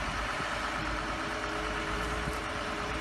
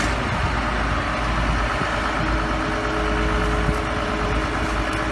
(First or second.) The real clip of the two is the second